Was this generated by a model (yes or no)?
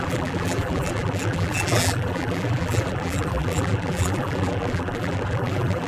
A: yes